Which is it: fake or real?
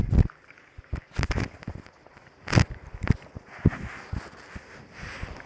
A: real